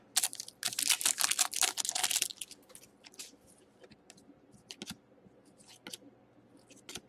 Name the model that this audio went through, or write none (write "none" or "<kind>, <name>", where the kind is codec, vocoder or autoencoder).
none